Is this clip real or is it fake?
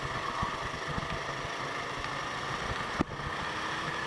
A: real